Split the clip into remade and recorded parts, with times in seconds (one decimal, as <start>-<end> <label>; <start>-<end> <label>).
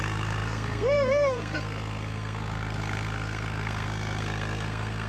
0.0-5.1 remade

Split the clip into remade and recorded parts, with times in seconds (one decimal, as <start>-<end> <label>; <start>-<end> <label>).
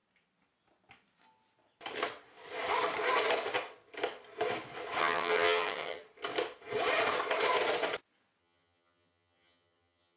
0.0-5.0 recorded; 5.0-6.0 remade; 6.0-8.4 recorded; 8.4-10.2 remade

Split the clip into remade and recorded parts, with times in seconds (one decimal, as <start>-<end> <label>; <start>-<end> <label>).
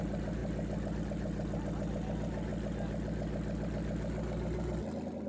0.0-5.3 recorded